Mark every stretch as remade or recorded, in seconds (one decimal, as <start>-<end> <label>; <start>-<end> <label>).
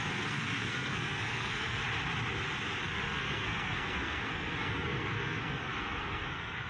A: 0.0-1.8 remade; 1.8-2.8 recorded; 2.8-6.7 remade